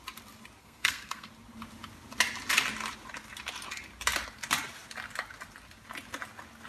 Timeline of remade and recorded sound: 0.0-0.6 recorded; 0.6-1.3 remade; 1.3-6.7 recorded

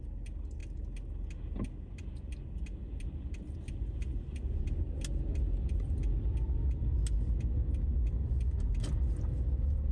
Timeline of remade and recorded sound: 0.0-9.9 recorded

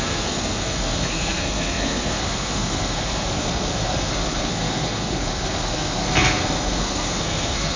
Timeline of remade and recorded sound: 0.0-7.8 remade

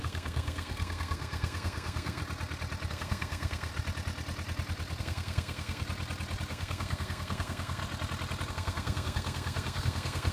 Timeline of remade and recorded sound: 0.0-2.2 remade; 2.2-2.9 recorded; 2.9-3.7 remade; 3.7-5.0 recorded; 5.0-5.8 remade; 5.8-6.5 recorded; 6.5-7.8 remade; 7.8-8.5 recorded; 8.5-10.3 remade

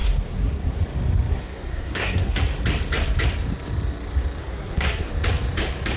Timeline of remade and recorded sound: 0.0-0.8 remade; 0.8-1.3 recorded; 1.3-2.4 remade; 2.4-4.4 recorded; 4.4-5.1 remade; 5.1-6.0 recorded

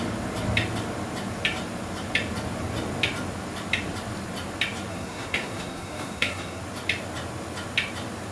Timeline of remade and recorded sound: 0.0-4.9 recorded; 4.9-6.6 remade; 6.6-8.3 recorded